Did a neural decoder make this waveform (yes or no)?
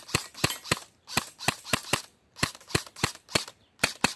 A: yes